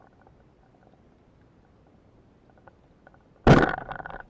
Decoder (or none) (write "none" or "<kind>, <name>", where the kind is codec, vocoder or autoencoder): none